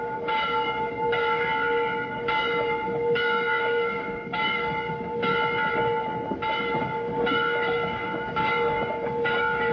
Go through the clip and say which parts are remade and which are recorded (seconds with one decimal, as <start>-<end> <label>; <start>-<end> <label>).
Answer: 0.0-1.5 remade; 1.5-2.1 recorded; 2.1-5.3 remade; 5.3-6.8 recorded; 6.8-9.7 remade